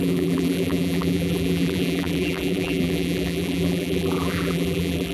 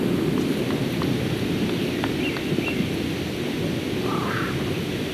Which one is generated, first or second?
first